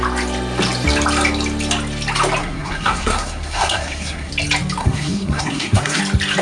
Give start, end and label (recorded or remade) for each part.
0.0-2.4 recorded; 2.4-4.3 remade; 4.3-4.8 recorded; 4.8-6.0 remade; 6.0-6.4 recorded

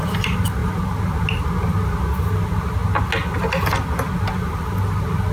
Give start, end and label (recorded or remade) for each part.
0.0-5.3 recorded

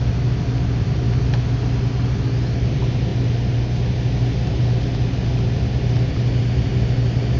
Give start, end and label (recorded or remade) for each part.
0.0-7.4 recorded

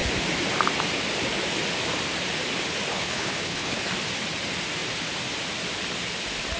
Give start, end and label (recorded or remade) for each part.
0.0-2.9 recorded; 2.9-3.8 remade; 3.8-6.6 recorded

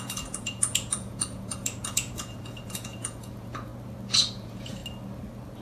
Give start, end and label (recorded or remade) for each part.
0.0-3.7 remade; 3.7-4.3 recorded; 4.3-4.8 remade; 4.8-5.6 recorded

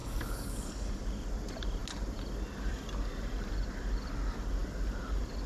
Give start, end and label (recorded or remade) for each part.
0.0-1.0 remade; 1.0-5.5 recorded

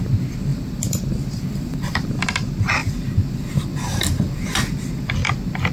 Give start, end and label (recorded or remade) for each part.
0.0-0.5 recorded; 0.5-2.1 remade; 2.1-2.8 recorded; 2.8-4.9 remade; 4.9-5.7 recorded